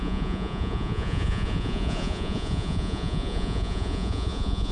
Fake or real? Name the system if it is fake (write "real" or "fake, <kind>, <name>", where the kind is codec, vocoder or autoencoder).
fake, vocoder, Vocos